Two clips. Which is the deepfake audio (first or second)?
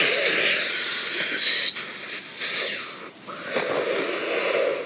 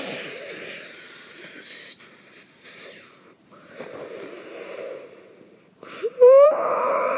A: second